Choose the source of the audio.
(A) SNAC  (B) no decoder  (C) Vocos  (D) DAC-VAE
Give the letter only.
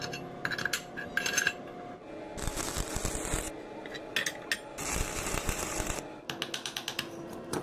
B